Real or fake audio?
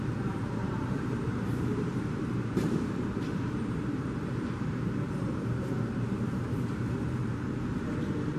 fake